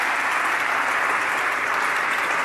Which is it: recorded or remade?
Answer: recorded